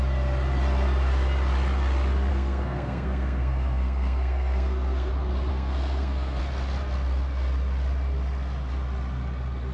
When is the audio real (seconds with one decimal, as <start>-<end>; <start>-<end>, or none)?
0.0-2.3; 5.1-5.5; 6.4-9.7